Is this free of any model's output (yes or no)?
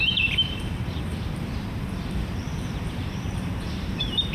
no